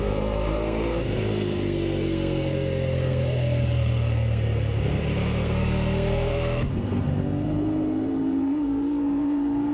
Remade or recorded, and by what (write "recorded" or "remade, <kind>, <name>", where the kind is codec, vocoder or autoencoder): remade, codec, SNAC